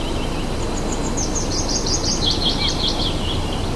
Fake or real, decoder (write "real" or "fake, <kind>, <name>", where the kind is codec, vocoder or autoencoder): real